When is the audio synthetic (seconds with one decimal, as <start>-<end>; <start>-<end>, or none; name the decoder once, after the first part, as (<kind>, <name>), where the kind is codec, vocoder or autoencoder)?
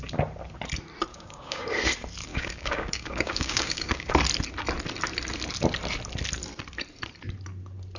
1.1-1.7 (codec, DAC); 2.3-4.1